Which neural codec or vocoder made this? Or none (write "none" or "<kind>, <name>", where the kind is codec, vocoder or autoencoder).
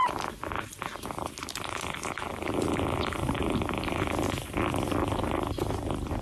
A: none